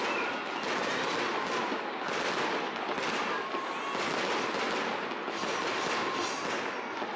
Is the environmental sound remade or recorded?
recorded